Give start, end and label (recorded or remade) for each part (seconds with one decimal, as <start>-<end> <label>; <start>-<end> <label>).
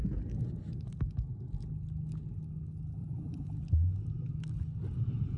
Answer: 0.0-3.0 recorded; 3.0-3.5 remade; 3.5-5.4 recorded